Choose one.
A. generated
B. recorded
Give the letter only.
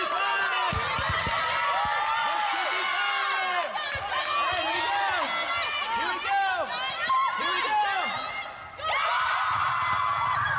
B